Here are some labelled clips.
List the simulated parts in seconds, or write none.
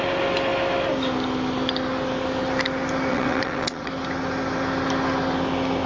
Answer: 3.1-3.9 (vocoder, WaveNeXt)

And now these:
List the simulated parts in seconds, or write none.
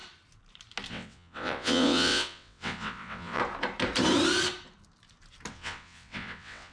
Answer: 0.9-3.4 (vocoder, WaveNeXt); 5.5-6.7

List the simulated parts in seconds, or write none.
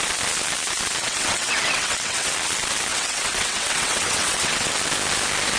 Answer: 1.0-2.3 (vocoder, WaveNeXt); 2.9-4.7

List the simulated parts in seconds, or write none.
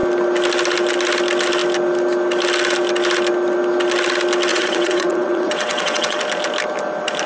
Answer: 4.5-6.2 (vocoder, WaveNeXt)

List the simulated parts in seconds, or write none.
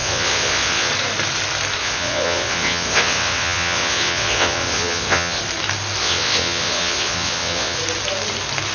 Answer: 0.0-0.9 (vocoder, WaveNeXt); 1.8-5.4; 6.0-7.8